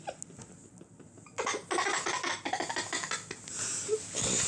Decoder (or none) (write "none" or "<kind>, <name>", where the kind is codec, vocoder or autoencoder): none